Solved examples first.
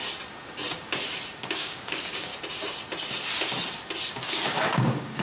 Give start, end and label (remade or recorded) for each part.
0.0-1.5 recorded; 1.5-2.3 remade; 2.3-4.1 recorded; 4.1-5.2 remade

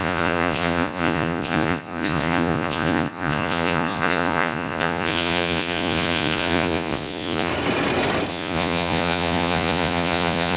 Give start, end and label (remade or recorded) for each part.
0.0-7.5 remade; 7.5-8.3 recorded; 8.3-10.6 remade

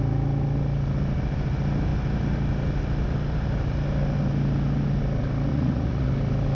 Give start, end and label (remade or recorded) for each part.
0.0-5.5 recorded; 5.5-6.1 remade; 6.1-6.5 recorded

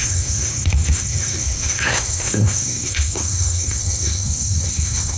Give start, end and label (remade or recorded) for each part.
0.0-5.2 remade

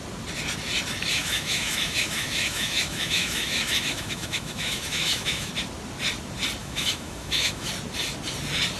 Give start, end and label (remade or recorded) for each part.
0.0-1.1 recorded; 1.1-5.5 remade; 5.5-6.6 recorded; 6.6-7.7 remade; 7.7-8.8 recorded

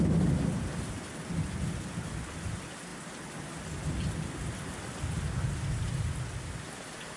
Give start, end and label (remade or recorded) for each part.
0.0-7.2 recorded